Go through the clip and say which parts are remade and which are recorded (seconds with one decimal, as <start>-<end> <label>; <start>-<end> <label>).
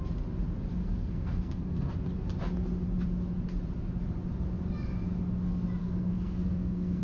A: 0.0-0.8 recorded; 0.8-1.9 remade; 1.9-5.8 recorded; 5.8-7.0 remade